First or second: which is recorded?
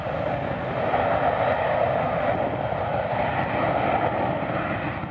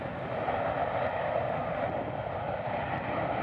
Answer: first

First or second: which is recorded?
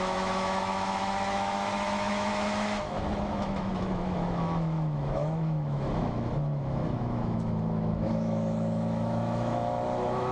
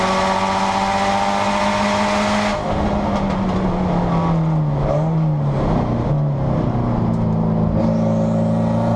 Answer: second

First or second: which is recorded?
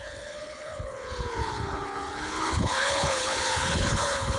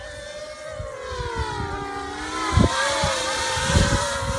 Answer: second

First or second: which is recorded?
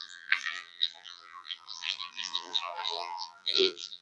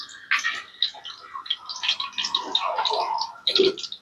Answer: second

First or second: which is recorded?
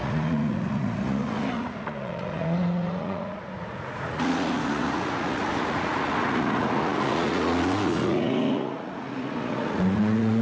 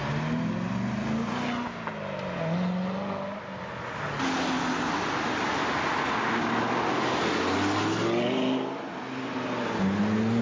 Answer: second